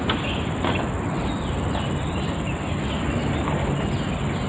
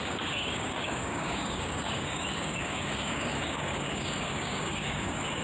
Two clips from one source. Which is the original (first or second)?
first